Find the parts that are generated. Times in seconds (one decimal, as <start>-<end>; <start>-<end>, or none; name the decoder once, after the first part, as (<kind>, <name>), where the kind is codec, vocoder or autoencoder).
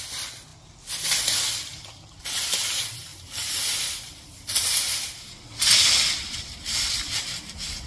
none